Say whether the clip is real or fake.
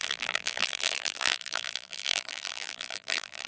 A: fake